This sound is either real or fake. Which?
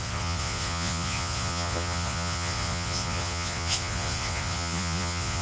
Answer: fake